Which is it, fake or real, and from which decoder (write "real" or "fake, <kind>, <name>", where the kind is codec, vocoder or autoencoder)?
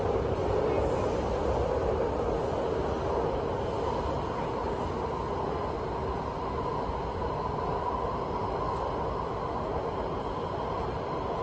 real